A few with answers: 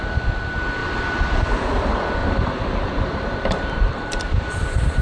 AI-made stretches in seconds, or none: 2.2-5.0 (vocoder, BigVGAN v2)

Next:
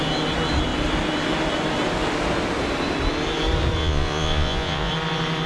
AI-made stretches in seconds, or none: 3.8-4.9 (vocoder, Vocos)

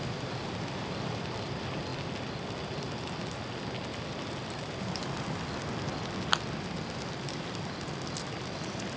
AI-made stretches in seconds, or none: none

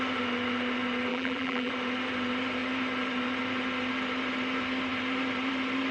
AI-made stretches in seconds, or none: 1.1-1.7 (vocoder, BigVGAN v2)

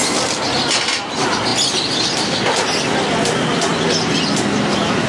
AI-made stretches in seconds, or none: none

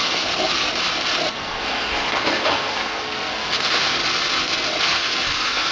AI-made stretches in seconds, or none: 0.0-0.7 (codec, SNAC); 1.3-4.0; 4.8-5.7

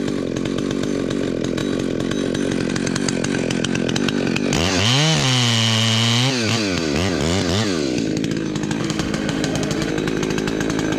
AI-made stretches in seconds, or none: 8.8-9.9 (autoencoder, DAC-VAE)

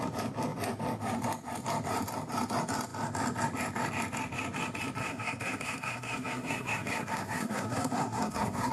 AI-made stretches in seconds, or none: 5.0-8.7 (codec, SNAC)